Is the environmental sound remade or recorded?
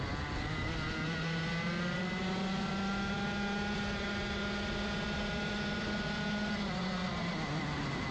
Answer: recorded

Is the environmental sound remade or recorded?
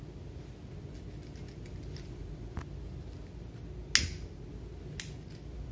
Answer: recorded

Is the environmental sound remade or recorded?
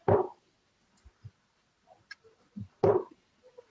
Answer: recorded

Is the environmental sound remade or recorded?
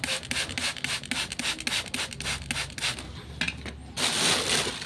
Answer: recorded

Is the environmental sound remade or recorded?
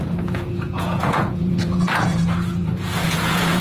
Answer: remade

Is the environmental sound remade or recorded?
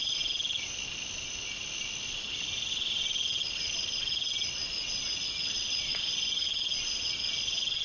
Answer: recorded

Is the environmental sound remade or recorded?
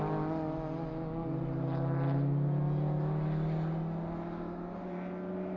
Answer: recorded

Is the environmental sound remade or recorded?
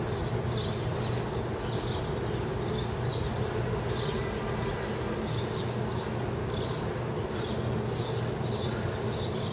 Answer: recorded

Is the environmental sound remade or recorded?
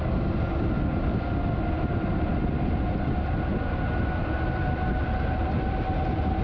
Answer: recorded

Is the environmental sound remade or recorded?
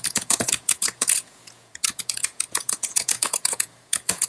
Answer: remade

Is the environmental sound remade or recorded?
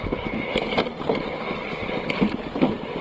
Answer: recorded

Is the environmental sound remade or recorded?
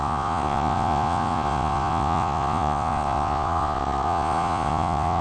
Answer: remade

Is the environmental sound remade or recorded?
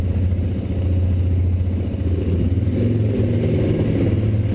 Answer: recorded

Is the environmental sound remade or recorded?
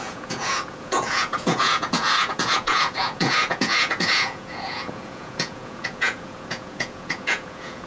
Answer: remade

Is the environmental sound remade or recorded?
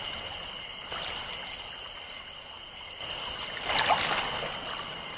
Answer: recorded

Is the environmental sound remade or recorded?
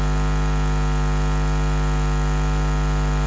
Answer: recorded